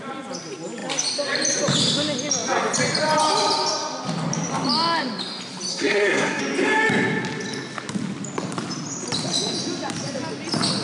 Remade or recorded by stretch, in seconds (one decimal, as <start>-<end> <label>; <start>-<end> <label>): 0.0-5.7 recorded; 5.7-6.4 remade; 6.4-10.8 recorded